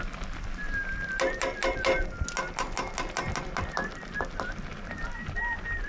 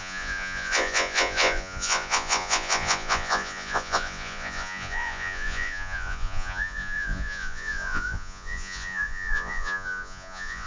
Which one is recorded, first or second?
first